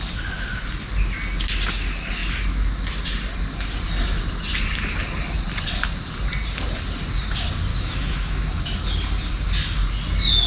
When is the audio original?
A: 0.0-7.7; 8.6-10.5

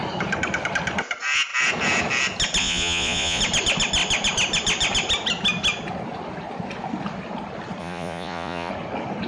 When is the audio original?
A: 0.0-2.6; 3.4-7.8; 8.7-9.3